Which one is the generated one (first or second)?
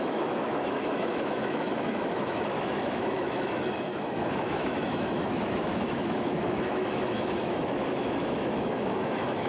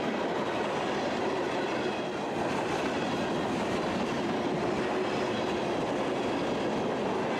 first